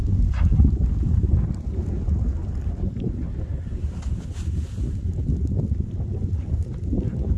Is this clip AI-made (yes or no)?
no